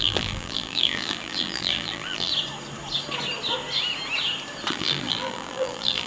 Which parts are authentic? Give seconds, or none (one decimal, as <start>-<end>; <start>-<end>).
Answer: 2.3-4.7